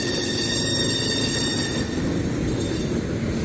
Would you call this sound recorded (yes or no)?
yes